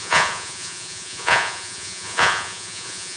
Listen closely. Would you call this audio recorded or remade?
remade